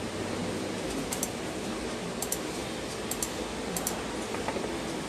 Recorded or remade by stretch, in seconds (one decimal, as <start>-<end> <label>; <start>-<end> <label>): 0.0-5.1 recorded